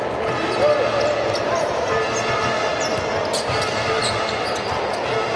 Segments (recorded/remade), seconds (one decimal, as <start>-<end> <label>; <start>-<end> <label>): 0.0-5.4 recorded